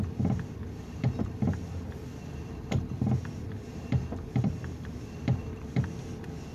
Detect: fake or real fake